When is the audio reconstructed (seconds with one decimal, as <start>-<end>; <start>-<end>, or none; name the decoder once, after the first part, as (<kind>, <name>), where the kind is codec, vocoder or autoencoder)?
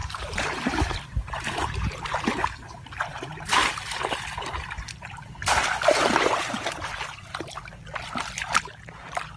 0.0-0.8 (vocoder, BigVGAN v2)